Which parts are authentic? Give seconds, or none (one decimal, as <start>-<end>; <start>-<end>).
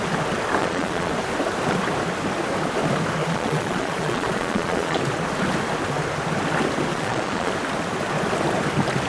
0.0-0.6; 1.1-3.2; 5.0-6.9; 7.5-9.1